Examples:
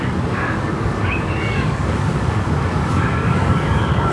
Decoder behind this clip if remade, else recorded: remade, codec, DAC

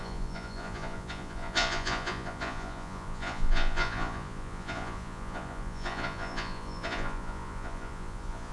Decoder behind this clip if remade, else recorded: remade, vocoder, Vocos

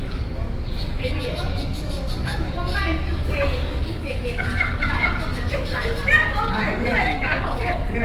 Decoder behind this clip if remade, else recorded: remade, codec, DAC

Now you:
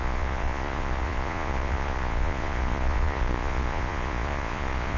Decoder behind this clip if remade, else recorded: remade, vocoder, Vocos